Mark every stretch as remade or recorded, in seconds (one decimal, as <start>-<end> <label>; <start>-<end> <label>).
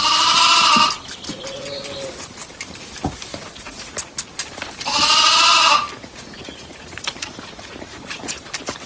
0.0-3.3 recorded; 3.3-3.9 remade; 3.9-6.0 recorded; 6.0-8.3 remade; 8.3-8.9 recorded